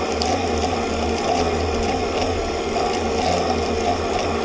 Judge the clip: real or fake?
real